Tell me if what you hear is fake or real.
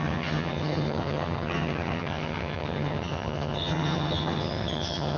fake